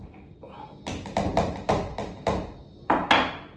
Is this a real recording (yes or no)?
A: yes